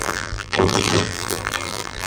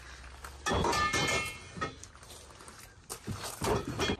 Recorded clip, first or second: second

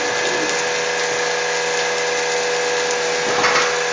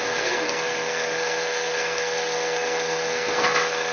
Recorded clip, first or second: first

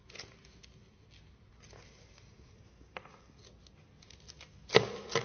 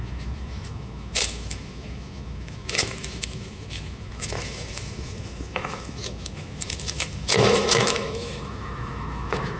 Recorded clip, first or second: first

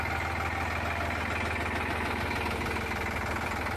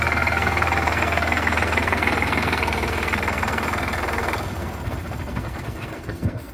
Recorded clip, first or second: first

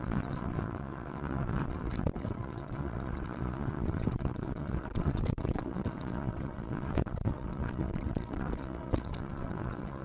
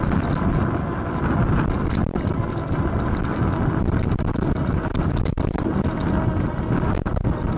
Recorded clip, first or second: second